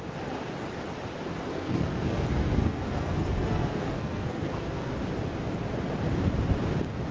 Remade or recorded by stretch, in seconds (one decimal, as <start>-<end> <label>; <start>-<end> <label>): 0.0-1.5 recorded; 1.5-4.9 remade; 4.9-7.1 recorded